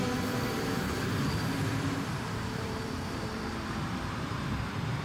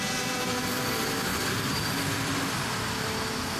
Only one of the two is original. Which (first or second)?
second